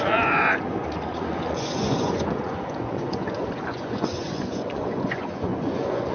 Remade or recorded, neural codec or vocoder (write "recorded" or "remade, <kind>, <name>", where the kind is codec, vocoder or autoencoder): remade, vocoder, Vocos